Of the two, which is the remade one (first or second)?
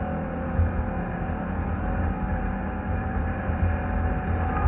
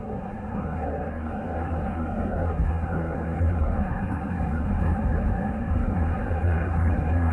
second